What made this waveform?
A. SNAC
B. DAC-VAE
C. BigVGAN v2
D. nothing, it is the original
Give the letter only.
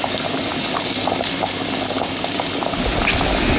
D